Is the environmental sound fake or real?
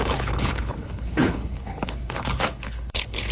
fake